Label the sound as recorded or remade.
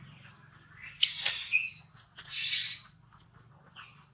recorded